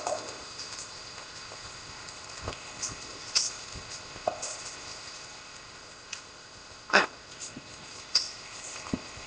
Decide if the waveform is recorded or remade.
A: remade